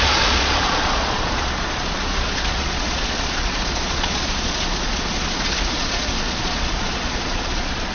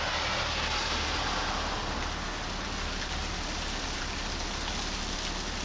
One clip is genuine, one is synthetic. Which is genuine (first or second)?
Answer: second